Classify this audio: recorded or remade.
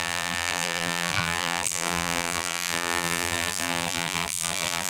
remade